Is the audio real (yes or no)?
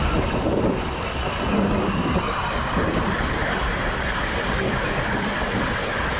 no